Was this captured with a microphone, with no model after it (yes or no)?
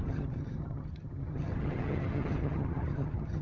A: no